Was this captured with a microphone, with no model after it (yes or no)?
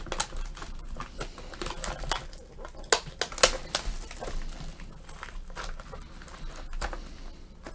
yes